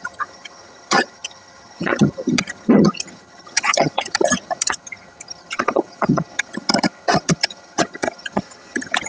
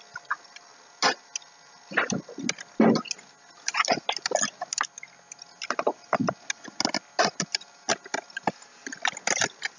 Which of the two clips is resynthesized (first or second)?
first